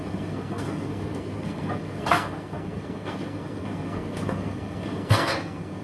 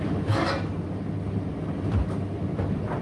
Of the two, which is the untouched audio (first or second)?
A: second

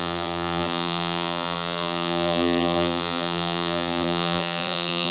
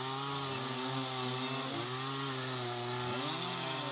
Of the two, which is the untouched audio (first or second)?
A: second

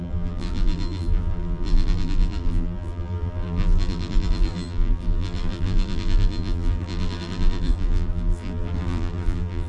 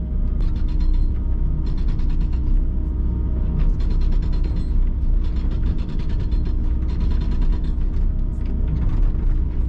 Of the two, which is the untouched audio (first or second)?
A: second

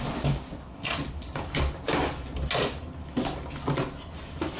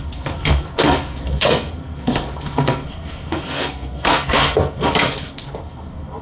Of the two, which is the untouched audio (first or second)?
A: first